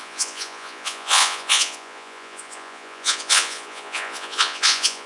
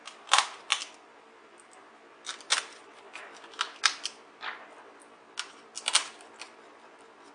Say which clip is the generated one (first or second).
first